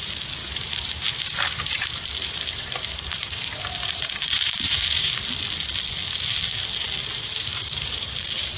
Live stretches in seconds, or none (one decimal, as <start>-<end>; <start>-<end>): 0.0-0.4; 5.2-7.1